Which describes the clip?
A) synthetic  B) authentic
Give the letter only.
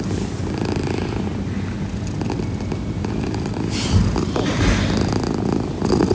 B